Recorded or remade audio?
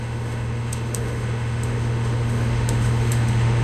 remade